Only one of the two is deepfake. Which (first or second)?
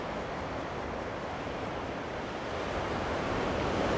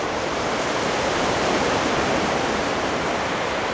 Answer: second